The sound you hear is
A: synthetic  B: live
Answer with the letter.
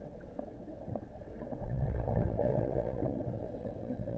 A